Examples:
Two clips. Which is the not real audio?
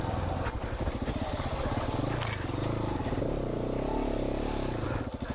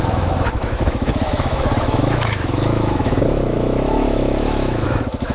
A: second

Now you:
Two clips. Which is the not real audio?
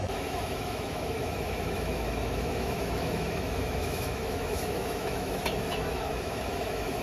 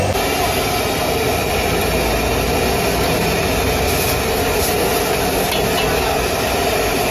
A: first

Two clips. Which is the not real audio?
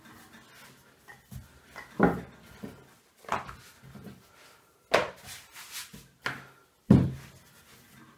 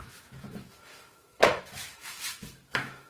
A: second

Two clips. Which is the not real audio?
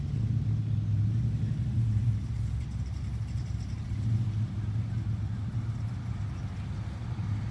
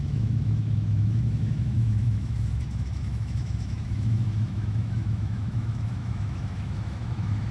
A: second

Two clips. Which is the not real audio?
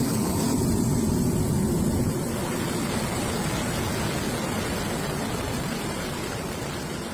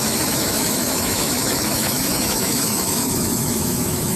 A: second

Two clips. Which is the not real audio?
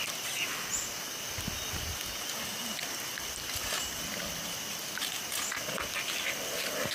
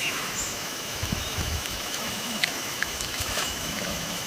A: second